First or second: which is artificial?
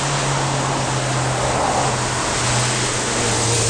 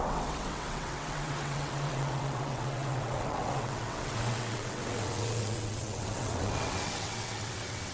second